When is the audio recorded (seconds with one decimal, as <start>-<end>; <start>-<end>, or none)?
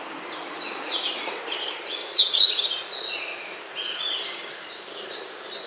0.0-0.4; 1.4-2.0; 3.6-5.7